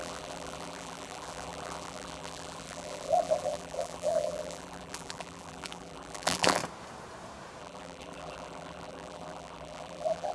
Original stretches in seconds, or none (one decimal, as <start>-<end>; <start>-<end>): 6.6-7.6